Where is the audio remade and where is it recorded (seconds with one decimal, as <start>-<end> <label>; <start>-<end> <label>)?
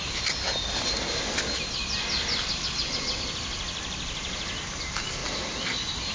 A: 0.0-6.1 recorded